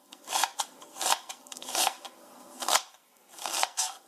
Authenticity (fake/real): fake